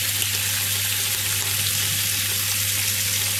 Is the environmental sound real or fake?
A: real